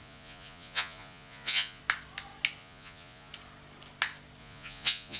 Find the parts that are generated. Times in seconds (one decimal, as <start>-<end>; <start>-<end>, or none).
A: 0.0-1.8; 2.6-3.3; 4.4-5.2